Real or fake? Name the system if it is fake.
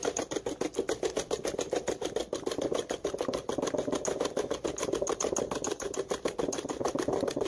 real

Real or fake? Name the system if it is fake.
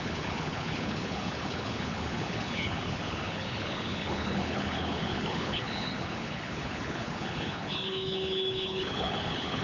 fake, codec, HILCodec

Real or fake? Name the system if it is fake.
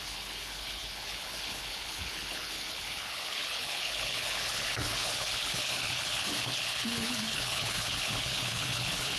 fake, codec, HILCodec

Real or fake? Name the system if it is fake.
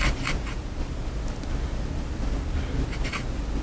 real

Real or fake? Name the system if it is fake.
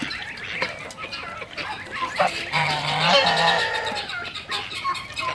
real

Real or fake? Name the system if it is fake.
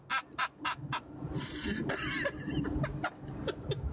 real